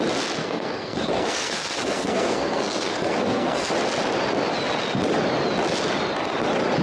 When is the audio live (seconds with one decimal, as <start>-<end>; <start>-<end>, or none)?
0.0-0.4; 3.7-6.8